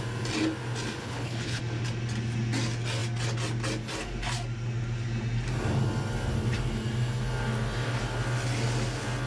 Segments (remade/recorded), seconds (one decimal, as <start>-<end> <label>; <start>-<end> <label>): 0.0-1.0 recorded; 1.0-1.6 remade; 1.6-9.3 recorded